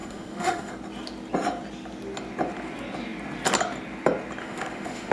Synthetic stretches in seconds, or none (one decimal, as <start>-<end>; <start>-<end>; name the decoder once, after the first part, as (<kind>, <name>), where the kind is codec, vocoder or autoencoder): 0.0-0.7 (autoencoder, DAC-VAE); 4.4-5.1